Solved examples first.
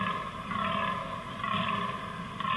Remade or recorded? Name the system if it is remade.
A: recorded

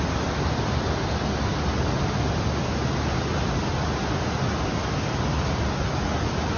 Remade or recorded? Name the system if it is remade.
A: recorded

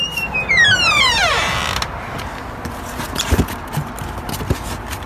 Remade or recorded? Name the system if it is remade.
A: recorded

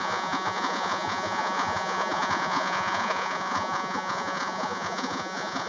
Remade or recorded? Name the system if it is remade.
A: remade, vocoder, Vocos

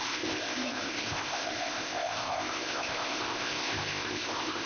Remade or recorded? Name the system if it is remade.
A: remade, codec, ZipCodec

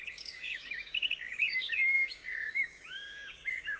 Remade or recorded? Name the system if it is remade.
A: remade, codec, DAC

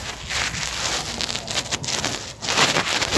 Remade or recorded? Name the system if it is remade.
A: recorded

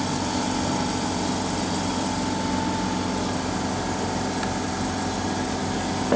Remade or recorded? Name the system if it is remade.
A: recorded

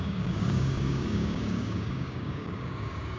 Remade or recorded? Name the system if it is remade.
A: remade, codec, DAC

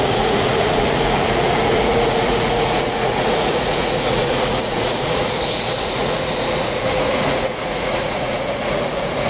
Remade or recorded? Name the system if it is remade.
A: remade, vocoder, Vocos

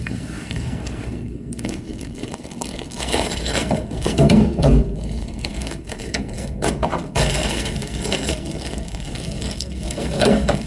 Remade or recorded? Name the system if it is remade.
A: remade, codec, SNAC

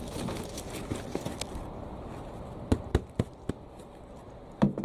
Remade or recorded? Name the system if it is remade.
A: recorded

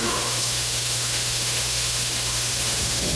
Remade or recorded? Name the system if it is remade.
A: remade, autoencoder, DAC-VAE